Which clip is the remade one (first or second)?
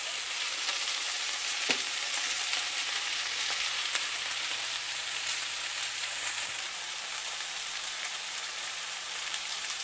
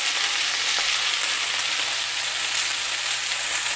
first